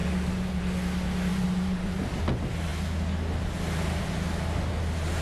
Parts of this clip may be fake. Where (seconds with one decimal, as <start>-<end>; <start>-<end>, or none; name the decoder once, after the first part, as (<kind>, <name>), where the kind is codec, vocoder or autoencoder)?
1.3-2.2 (vocoder, BigVGAN v2)